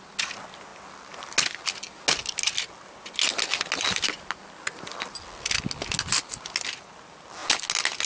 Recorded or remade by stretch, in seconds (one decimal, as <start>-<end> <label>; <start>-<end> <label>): 0.0-8.1 recorded